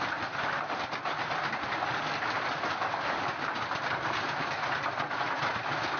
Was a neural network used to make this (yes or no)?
no